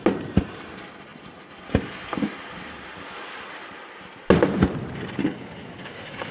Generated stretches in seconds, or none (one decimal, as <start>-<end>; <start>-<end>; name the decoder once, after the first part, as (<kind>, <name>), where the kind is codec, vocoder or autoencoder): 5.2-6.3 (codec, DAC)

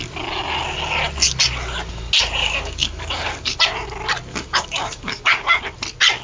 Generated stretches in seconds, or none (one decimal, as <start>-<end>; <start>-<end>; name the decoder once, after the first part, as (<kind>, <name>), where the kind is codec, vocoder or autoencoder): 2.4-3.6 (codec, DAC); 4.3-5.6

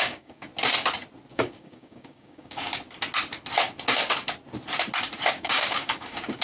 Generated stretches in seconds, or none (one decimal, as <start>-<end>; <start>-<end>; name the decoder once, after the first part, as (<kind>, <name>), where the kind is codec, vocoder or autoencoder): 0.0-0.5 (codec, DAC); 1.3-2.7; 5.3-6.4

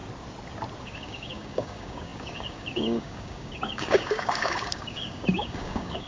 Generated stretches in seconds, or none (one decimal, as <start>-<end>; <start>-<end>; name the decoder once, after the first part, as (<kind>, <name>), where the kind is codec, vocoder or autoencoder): 0.8-6.1 (codec, DAC)

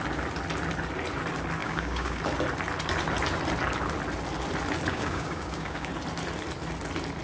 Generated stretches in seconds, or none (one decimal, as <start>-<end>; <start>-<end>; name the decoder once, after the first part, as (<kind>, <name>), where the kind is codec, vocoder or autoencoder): 1.6-2.2 (codec, DAC); 4.9-5.9

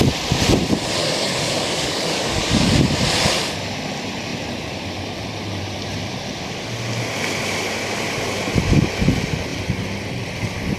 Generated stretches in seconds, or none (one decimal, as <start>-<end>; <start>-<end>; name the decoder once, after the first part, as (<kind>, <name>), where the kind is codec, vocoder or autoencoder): 1.0-2.7 (codec, DAC)

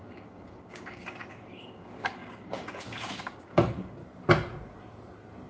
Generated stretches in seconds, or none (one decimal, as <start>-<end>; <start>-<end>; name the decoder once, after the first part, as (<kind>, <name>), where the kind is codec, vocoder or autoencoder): 0.0-4.0 (codec, DAC)

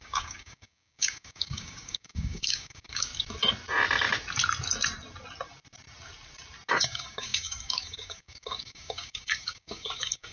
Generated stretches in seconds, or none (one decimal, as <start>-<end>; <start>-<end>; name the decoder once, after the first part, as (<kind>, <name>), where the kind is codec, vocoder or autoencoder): 0.0-3.1 (codec, DAC); 6.7-10.3